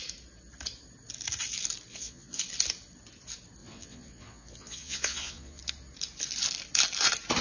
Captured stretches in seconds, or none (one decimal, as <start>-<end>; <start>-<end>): 0.0-1.9; 2.4-3.6; 5.6-7.4